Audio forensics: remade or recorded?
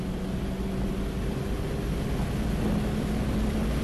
recorded